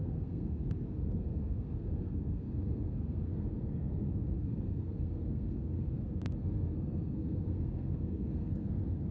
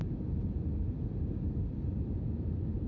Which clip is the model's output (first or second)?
first